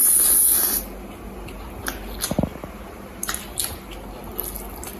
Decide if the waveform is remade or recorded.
recorded